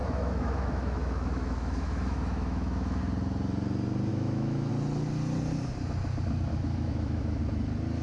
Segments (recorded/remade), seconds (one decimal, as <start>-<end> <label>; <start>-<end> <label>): 0.0-3.0 remade; 3.0-4.1 recorded; 4.1-4.7 remade; 4.7-6.5 recorded; 6.5-7.4 remade; 7.4-8.0 recorded